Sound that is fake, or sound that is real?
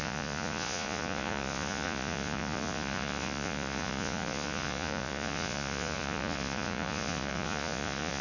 fake